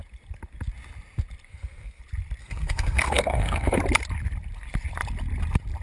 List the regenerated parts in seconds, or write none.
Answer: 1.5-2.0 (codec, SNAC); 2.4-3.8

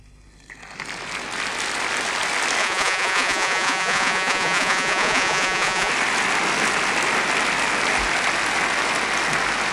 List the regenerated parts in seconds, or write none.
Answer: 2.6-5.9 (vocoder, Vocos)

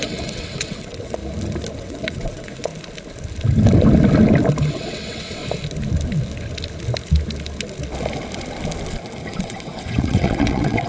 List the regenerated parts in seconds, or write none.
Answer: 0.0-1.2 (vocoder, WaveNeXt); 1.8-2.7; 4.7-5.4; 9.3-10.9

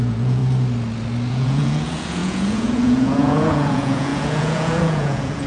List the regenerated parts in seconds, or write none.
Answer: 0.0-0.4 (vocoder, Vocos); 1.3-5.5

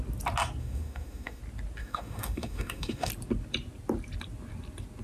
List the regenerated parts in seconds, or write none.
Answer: 0.6-1.4 (autoencoder, DAC-VAE); 1.8-3.1

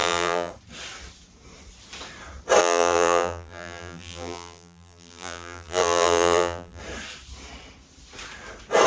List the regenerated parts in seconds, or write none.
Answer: 0.0-0.5 (vocoder, BigVGAN v2); 2.6-6.8

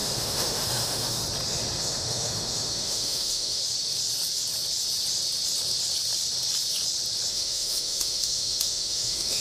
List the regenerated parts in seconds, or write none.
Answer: 0.0-1.2 (autoencoder, DAC-VAE); 1.8-3.6; 7.3-9.4